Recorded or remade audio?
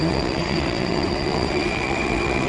remade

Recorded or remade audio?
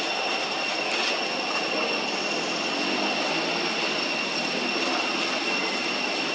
recorded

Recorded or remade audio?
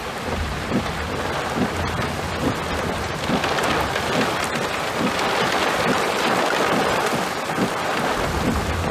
recorded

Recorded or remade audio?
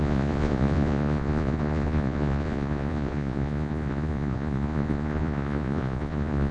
remade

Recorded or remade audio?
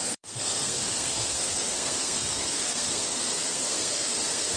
remade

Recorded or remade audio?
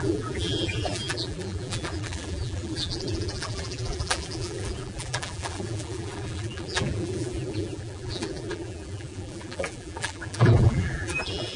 remade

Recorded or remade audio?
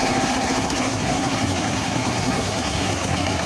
remade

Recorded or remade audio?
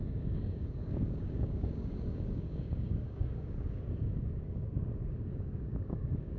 remade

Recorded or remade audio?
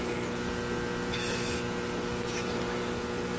recorded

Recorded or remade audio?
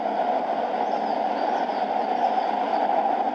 recorded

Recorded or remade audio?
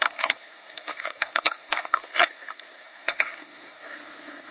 remade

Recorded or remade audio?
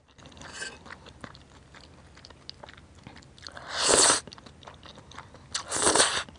recorded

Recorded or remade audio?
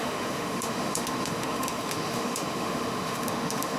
remade